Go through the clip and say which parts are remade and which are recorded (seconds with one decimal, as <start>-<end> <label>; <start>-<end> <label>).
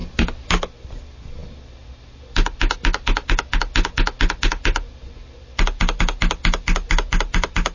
0.0-7.7 recorded